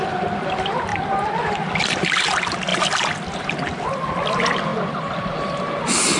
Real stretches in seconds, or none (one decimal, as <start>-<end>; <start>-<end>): 0.0-6.2